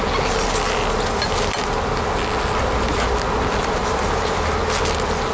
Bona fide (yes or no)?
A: yes